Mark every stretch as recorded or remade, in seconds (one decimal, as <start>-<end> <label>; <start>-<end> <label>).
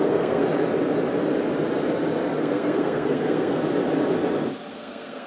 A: 0.0-0.4 remade; 0.4-2.4 recorded; 2.4-3.6 remade; 3.6-4.7 recorded; 4.7-5.3 remade